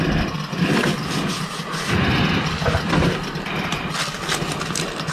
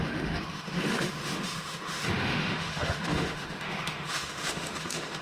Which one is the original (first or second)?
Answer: first